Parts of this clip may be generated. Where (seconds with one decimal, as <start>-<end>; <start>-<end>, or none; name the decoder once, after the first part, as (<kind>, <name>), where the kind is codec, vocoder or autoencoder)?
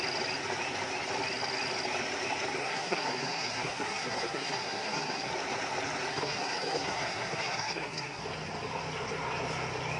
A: 2.6-5.3 (codec, SNAC); 6.1-8.2